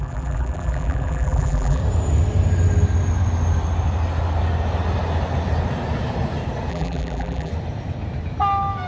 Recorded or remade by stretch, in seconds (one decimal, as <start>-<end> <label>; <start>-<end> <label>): 0.0-1.8 remade; 1.8-6.7 recorded; 6.7-7.5 remade; 7.5-8.9 recorded